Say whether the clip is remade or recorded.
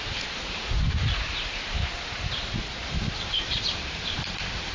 remade